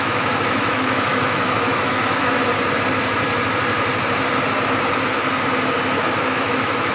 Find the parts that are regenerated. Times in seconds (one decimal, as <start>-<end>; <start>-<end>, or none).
0.0-2.5; 6.2-6.9